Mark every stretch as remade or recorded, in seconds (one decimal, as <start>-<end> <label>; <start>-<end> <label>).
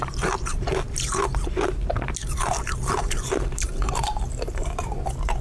0.0-0.5 recorded; 0.5-1.1 remade; 1.1-2.2 recorded; 2.2-5.0 remade; 5.0-5.4 recorded